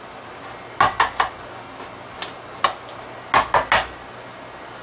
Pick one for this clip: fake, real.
real